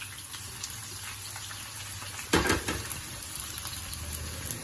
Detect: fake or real real